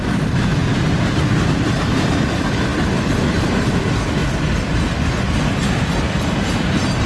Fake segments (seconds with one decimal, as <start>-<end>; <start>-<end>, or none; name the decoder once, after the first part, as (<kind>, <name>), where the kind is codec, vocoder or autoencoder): none